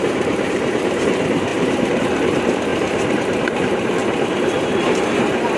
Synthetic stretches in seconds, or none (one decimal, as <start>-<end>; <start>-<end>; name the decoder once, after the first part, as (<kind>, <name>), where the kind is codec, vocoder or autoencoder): 0.0-5.6 (vocoder, BigVGAN v2)